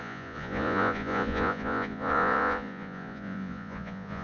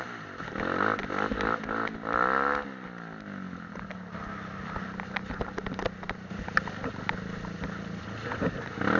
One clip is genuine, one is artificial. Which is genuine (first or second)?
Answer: second